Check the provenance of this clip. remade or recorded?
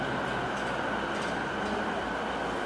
recorded